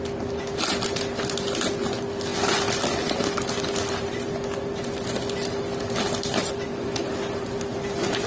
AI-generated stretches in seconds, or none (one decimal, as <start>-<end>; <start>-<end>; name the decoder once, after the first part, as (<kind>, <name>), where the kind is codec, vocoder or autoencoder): none